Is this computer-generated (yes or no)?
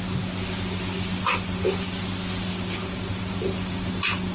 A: no